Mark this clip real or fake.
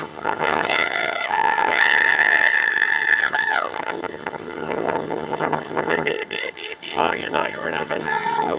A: fake